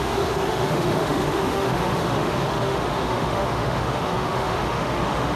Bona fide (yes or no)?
no